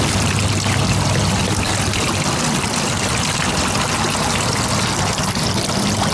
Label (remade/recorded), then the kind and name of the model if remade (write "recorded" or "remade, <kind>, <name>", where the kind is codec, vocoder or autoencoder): recorded